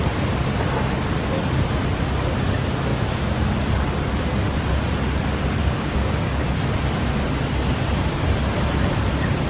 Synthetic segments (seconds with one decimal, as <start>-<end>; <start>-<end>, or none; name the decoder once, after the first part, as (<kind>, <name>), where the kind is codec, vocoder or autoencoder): 2.9-3.4 (codec, DAC); 5.6-6.5